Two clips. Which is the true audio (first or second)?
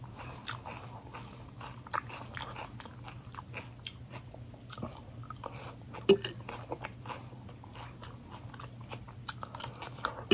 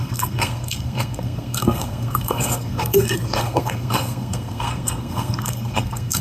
first